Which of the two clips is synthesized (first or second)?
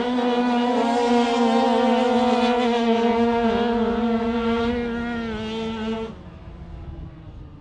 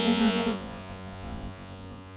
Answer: second